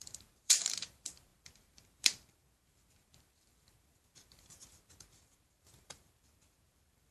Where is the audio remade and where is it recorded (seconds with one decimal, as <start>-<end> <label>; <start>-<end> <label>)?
0.0-7.1 remade